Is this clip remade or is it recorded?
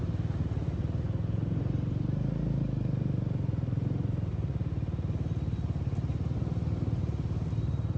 recorded